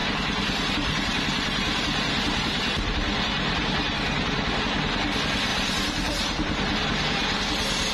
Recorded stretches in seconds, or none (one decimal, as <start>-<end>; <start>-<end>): 4.6-5.5